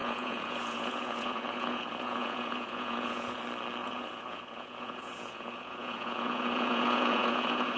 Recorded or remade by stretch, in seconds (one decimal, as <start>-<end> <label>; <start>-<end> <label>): 0.0-3.4 remade; 3.4-3.8 recorded; 3.8-7.8 remade